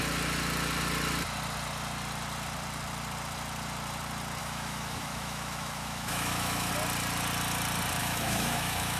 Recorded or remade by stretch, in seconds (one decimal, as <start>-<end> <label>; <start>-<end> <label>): 0.0-4.4 recorded; 4.4-6.7 remade; 6.7-8.0 recorded; 8.0-9.0 remade